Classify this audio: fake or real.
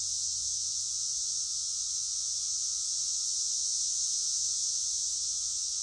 fake